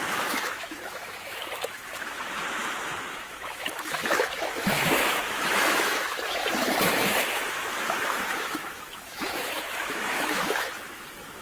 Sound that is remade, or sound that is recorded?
remade